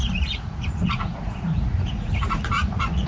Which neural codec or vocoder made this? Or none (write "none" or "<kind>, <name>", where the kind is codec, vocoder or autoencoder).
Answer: vocoder, Vocos